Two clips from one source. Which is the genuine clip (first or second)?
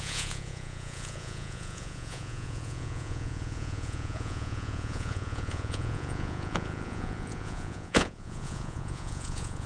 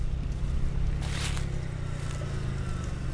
second